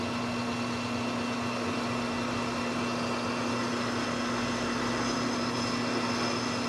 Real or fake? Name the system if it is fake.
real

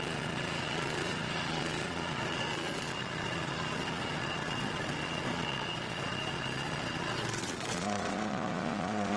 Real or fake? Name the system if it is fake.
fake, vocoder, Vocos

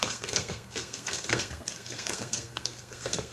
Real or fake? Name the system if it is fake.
fake, codec, SNAC